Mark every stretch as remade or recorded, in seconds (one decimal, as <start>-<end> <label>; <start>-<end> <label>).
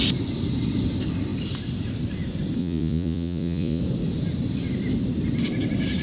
0.0-2.6 recorded; 2.6-3.8 remade; 3.8-6.0 recorded